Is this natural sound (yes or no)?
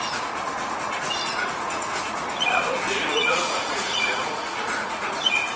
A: no